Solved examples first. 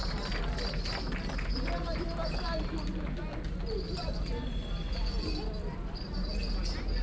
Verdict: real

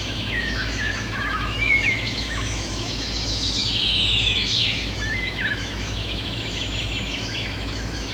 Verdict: fake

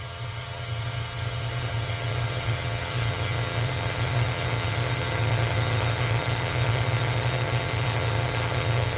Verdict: fake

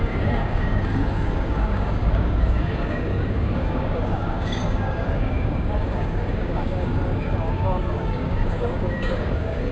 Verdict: fake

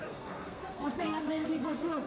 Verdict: fake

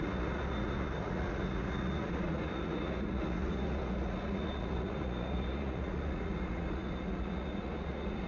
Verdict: fake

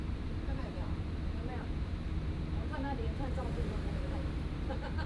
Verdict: fake